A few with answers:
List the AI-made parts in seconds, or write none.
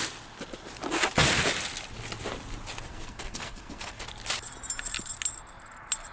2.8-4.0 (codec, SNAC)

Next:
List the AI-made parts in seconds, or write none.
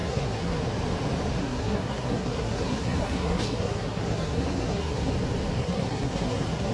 0.0-0.6 (codec, SNAC); 1.4-5.1; 5.6-6.7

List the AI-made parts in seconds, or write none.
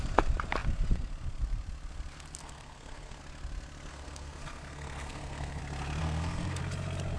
2.4-3.2 (codec, SNAC); 3.9-5.6; 6.0-6.6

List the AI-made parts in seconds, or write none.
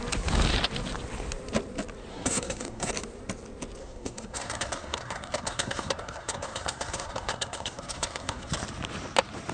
2.1-2.9 (codec, SNAC); 3.8-8.5